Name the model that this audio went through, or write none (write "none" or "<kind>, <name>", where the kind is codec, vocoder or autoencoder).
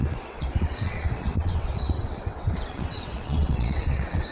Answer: vocoder, WaveNeXt